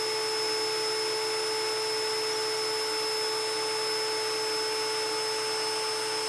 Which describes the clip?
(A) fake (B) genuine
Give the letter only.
B